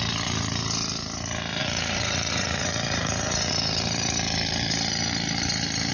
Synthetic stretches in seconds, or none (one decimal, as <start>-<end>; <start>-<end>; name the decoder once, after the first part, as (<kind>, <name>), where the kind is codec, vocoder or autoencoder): 1.6-3.5 (vocoder, Vocos)